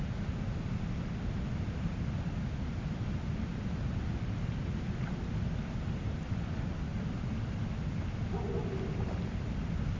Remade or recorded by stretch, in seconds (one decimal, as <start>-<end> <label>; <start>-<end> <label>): 0.0-10.0 recorded

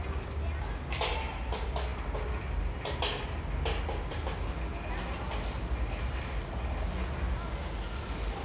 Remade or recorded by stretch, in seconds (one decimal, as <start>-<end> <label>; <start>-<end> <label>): 0.0-8.4 recorded

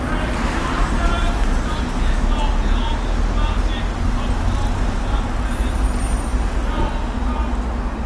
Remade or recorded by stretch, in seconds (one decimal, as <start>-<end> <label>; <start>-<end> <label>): 0.0-8.1 recorded